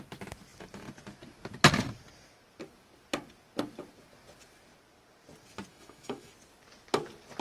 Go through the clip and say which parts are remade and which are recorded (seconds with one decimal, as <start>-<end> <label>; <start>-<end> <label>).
0.0-5.7 recorded; 5.7-6.3 remade; 6.3-7.4 recorded